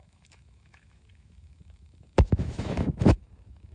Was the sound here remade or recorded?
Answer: remade